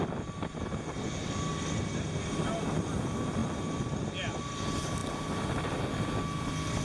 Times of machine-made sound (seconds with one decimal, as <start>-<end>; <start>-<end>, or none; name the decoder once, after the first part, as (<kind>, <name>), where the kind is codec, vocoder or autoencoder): none